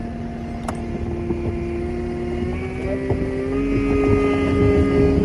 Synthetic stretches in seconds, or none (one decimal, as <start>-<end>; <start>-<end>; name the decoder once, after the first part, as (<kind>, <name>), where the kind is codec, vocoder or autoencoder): none